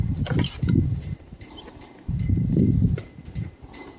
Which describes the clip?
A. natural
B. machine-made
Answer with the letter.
B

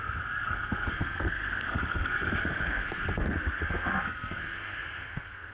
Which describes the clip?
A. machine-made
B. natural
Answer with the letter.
A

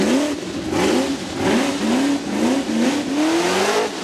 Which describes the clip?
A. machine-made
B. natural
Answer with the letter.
B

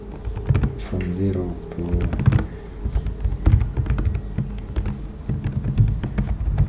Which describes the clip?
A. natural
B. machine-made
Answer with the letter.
A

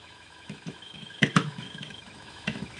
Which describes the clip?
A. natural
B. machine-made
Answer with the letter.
B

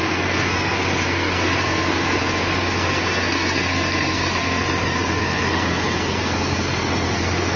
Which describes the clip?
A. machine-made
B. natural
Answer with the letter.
A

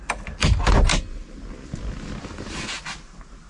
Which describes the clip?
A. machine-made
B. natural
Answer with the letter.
B